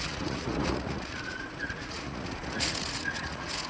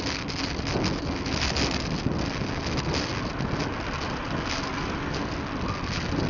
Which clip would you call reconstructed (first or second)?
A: first